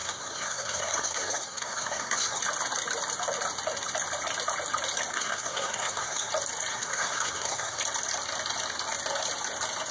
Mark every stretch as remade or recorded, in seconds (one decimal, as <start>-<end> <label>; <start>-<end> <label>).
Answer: 0.0-2.4 remade; 2.4-5.1 recorded; 5.1-6.3 remade; 6.3-6.7 recorded; 6.7-7.8 remade; 7.8-9.9 recorded